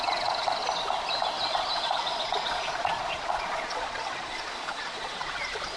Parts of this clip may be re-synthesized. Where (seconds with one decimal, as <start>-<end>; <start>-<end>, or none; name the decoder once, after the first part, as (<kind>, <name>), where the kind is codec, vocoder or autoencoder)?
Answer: 0.0-0.6 (vocoder, Vocos); 1.5-5.8